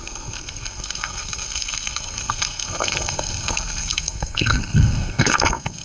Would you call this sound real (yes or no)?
no